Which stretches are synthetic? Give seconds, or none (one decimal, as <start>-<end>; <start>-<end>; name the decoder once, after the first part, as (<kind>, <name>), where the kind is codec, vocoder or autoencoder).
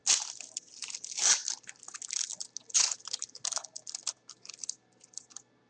none